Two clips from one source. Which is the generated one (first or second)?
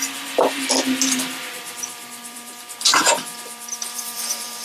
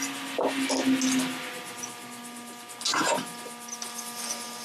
first